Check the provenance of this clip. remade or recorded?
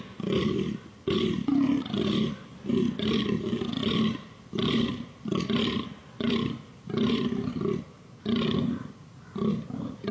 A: recorded